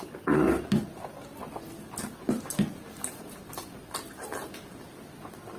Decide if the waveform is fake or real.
real